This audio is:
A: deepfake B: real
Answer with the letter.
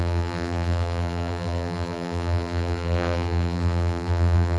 A